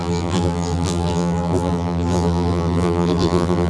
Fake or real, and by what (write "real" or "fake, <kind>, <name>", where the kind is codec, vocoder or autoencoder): fake, vocoder, BigVGAN v2